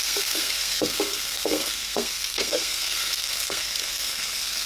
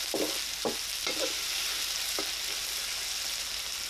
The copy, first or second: first